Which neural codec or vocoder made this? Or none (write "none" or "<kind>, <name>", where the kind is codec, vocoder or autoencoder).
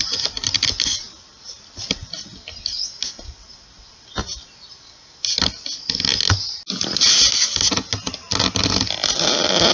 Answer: none